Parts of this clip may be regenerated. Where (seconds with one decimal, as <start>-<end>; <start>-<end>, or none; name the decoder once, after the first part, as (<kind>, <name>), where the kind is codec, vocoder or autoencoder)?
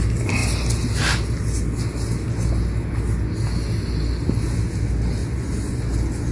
5.2-5.8 (vocoder, Vocos)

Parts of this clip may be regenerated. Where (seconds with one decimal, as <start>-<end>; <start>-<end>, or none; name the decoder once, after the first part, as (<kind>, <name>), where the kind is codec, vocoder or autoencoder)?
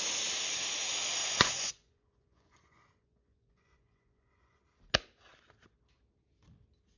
1.2-4.6 (vocoder, Vocos)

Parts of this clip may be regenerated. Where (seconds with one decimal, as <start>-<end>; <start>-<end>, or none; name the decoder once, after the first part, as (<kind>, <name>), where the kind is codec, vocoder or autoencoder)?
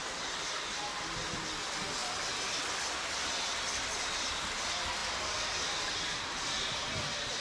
none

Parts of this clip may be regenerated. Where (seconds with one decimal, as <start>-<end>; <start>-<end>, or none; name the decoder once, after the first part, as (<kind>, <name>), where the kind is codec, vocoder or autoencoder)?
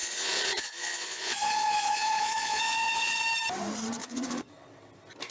0.0-3.2 (vocoder, Vocos); 4.0-4.5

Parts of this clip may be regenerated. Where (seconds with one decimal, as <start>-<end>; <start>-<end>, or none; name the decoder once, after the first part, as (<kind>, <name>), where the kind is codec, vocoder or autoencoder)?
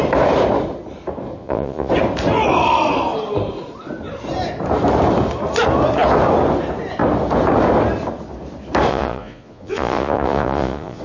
1.4-1.9 (vocoder, Vocos); 8.9-11.0